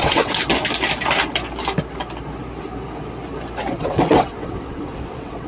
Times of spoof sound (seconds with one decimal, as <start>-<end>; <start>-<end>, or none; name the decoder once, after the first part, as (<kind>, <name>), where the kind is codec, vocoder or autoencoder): 0.0-0.4 (vocoder, WaveNeXt); 3.7-5.5